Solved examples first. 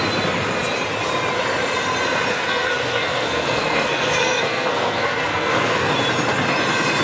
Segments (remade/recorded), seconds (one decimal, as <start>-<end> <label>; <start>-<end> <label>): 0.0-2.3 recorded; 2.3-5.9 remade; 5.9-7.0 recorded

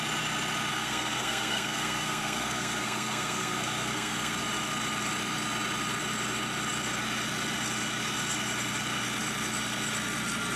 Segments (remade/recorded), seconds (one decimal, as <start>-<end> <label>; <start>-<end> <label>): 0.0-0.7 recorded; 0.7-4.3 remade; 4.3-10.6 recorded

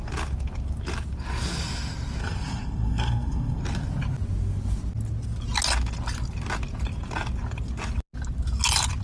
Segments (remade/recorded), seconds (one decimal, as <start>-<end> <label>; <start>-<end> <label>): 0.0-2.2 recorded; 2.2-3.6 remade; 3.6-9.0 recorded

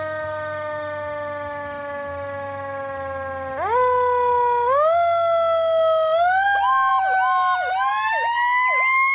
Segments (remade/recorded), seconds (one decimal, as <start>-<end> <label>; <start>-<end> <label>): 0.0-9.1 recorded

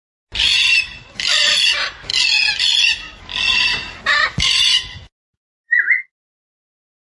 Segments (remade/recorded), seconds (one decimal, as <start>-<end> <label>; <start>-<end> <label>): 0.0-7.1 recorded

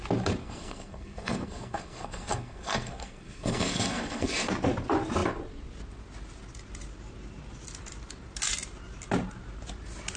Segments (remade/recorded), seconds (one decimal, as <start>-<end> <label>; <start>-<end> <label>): 0.0-0.4 recorded; 0.4-4.5 remade; 4.5-10.2 recorded

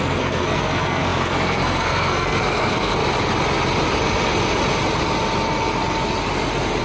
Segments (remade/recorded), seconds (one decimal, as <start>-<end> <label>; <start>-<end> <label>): 0.0-3.0 remade; 3.0-6.8 recorded

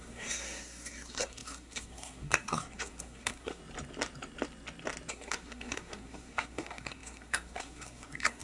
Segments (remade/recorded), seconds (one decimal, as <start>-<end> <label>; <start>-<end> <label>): 0.0-3.6 remade; 3.6-5.1 recorded; 5.1-8.4 remade